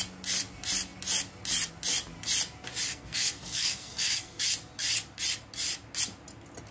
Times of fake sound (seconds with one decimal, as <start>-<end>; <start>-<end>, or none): 2.9-4.4